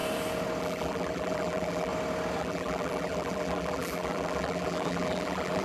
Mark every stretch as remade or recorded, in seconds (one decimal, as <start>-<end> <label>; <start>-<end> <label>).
0.0-0.6 recorded; 0.6-1.9 remade; 1.9-2.4 recorded; 2.4-5.6 remade